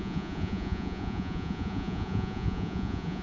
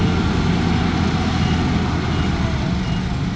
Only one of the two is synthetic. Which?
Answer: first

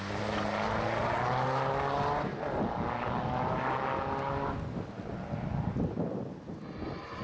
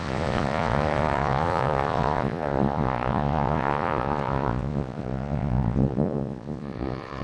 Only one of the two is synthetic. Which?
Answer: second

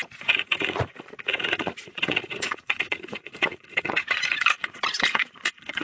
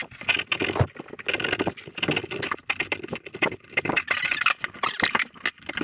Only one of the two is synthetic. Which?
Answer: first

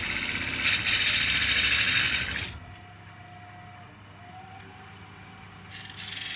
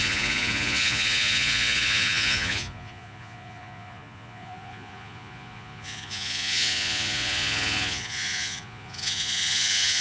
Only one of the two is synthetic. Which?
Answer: second